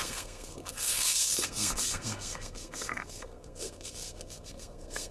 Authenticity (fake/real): fake